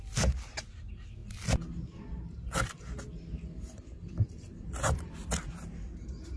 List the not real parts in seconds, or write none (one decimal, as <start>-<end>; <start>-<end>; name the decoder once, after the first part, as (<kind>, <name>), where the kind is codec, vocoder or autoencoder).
none